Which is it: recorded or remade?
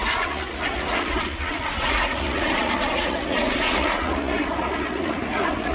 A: remade